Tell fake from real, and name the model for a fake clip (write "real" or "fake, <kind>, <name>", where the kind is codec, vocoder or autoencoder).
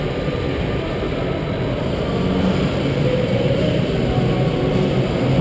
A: real